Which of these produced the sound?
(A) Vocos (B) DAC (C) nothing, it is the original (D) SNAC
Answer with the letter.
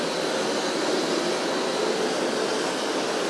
C